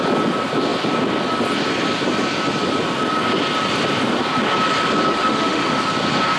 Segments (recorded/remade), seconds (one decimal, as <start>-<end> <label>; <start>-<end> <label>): 0.0-5.1 recorded; 5.1-5.8 remade; 5.8-6.4 recorded